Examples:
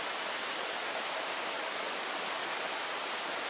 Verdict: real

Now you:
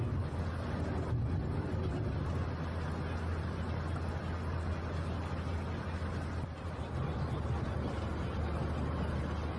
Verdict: real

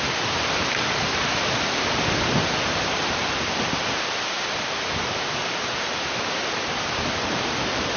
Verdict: fake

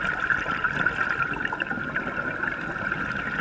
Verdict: fake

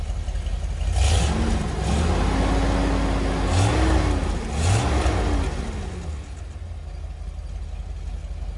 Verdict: real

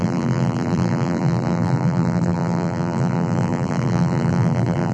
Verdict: fake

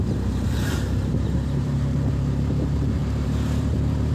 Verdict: fake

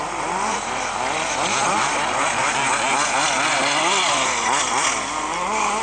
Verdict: real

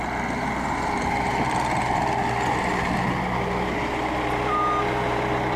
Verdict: real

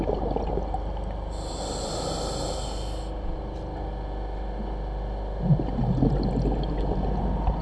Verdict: real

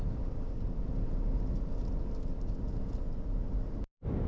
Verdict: fake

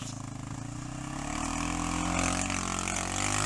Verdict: real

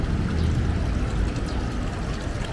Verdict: real